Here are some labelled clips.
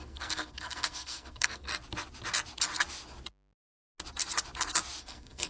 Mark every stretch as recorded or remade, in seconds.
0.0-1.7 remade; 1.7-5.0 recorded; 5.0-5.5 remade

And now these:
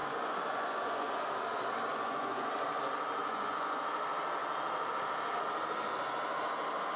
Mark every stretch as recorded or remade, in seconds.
0.0-1.1 remade; 1.1-1.9 recorded; 1.9-2.5 remade; 2.5-3.2 recorded; 3.2-3.8 remade; 3.8-7.0 recorded

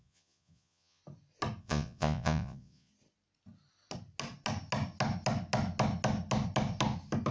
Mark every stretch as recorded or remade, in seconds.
0.0-1.0 remade; 1.0-1.6 recorded; 1.6-2.9 remade; 2.9-7.3 recorded

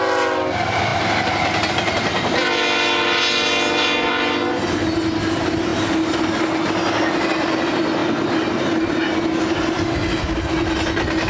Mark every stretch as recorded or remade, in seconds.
0.0-11.3 recorded

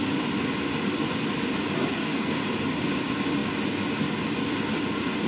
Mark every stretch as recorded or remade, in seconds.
0.0-1.8 recorded; 1.8-2.3 remade; 2.3-5.3 recorded